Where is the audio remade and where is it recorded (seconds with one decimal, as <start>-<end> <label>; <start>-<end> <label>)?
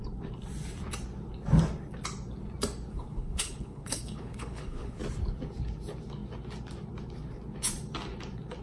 0.0-2.9 recorded; 2.9-5.0 remade; 5.0-8.6 recorded